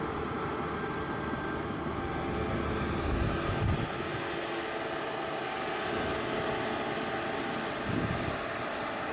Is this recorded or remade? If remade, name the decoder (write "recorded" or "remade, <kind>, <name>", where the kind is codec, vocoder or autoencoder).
recorded